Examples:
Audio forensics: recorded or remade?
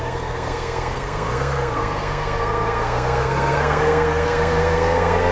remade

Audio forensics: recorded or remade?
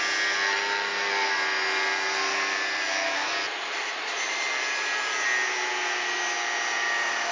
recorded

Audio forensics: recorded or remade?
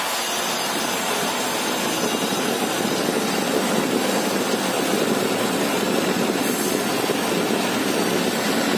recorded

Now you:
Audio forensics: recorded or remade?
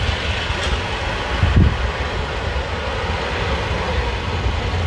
recorded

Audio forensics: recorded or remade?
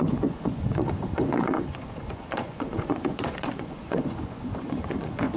remade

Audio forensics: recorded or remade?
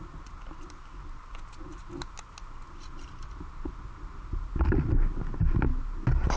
recorded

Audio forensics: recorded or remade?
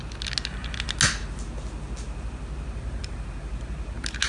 recorded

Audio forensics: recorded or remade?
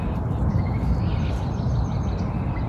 recorded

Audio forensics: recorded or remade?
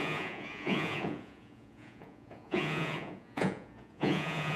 remade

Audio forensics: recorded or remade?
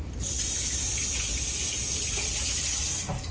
recorded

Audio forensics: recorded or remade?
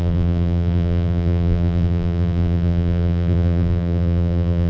remade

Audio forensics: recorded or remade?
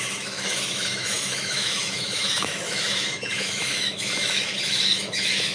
remade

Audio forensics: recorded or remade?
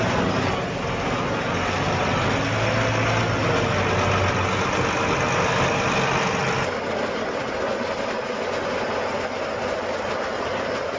recorded